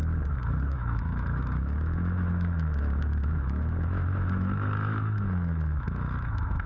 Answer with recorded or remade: remade